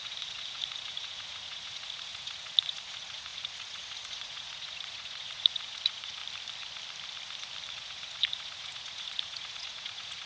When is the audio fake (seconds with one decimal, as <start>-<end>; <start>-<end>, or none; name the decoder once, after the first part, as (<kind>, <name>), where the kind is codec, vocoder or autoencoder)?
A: 0.0-6.2 (vocoder, Vocos); 7.7-10.3